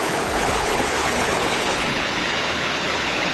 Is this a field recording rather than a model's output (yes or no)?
no